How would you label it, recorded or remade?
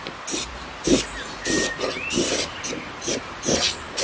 recorded